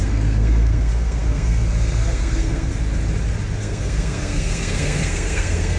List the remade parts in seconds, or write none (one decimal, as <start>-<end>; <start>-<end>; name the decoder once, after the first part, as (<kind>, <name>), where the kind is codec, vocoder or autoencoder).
0.0-2.7 (codec, SNAC); 3.6-5.8